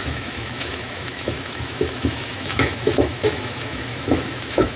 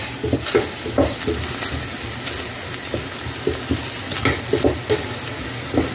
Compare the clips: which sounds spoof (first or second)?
first